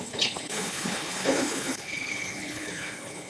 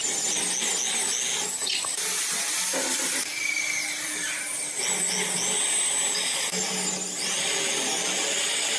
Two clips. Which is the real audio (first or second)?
second